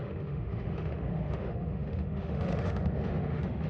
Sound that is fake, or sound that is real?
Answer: fake